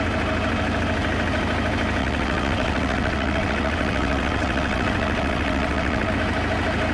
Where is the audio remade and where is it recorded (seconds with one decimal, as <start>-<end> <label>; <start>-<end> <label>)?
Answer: 0.0-2.0 recorded; 2.0-6.1 remade; 6.1-6.9 recorded